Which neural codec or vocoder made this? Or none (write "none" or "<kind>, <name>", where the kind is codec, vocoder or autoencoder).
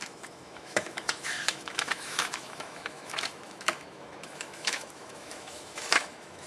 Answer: autoencoder, DAC-VAE